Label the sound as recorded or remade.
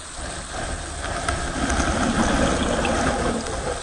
recorded